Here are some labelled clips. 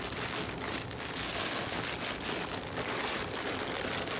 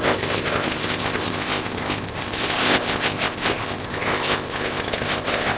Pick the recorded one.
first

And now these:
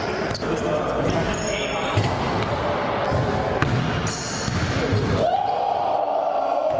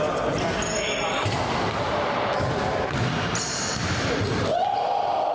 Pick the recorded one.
first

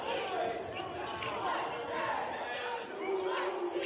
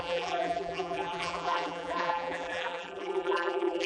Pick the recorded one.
first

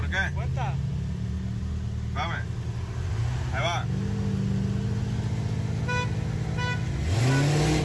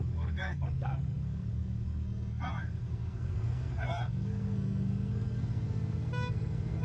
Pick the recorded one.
first